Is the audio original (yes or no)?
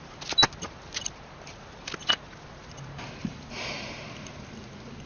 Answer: yes